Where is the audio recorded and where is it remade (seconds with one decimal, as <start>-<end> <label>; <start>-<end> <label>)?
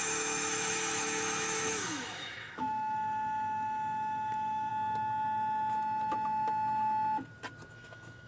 0.0-4.7 remade; 4.7-7.7 recorded; 7.7-8.3 remade